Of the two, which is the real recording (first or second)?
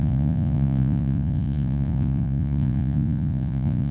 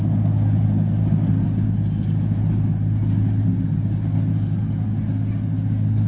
second